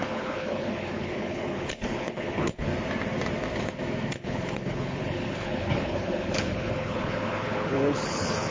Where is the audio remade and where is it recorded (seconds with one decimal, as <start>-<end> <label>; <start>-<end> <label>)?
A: 0.0-2.7 remade; 2.7-4.1 recorded; 4.1-8.5 remade